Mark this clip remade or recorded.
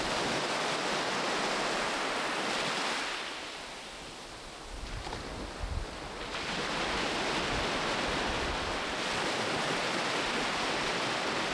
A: recorded